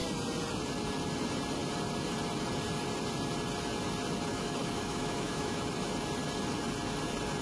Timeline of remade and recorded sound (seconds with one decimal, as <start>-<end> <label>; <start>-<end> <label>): 0.0-4.3 recorded; 4.3-5.7 remade; 5.7-7.4 recorded